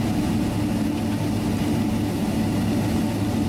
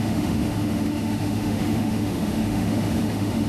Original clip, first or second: first